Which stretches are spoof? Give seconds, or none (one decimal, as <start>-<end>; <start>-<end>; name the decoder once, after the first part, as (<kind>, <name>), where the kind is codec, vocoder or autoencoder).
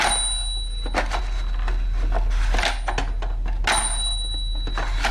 none